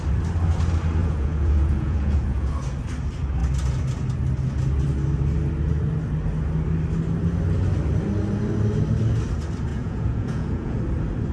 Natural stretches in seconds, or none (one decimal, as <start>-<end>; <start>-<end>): 0.0-1.0; 2.5-9.7; 10.8-11.3